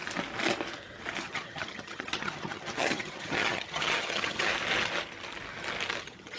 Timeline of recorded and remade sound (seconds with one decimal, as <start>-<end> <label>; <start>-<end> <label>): 0.0-1.2 recorded; 1.2-4.5 remade; 4.5-6.0 recorded; 6.0-6.4 remade